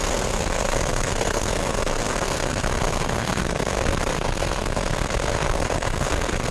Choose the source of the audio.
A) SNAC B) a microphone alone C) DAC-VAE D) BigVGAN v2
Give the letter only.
A